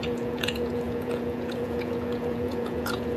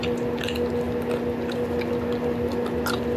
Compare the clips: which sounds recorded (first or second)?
second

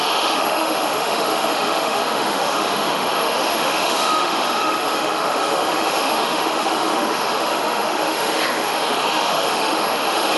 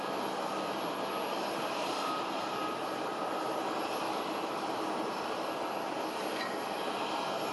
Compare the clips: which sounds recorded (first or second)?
second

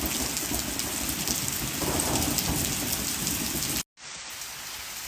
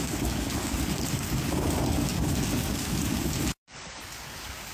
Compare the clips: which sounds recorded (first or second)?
first